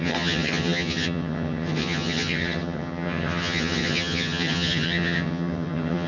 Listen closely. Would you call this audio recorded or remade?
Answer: remade